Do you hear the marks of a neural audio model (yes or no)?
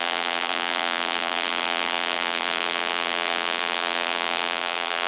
yes